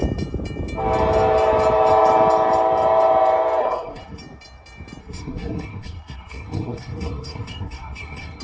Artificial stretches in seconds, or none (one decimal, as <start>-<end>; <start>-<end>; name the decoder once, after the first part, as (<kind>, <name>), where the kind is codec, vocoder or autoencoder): 3.6-4.2 (codec, SNAC); 5.0-8.4